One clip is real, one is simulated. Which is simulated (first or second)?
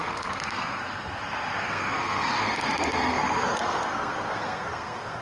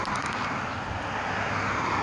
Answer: first